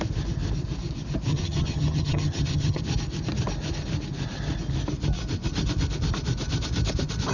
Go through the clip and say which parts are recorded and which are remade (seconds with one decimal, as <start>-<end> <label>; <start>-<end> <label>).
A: 0.0-1.3 recorded; 1.3-2.8 remade; 2.8-7.3 recorded